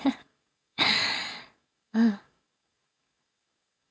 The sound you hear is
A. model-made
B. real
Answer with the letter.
A